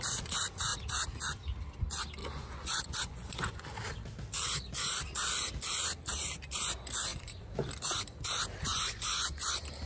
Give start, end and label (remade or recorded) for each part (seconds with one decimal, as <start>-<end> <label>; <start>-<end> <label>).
0.0-2.2 recorded; 2.2-3.6 remade; 3.6-7.1 recorded; 7.1-7.7 remade; 7.7-8.7 recorded; 8.7-9.5 remade; 9.5-9.9 recorded